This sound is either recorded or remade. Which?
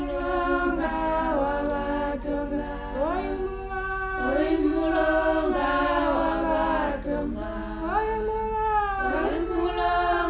recorded